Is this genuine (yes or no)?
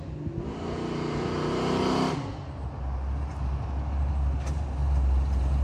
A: yes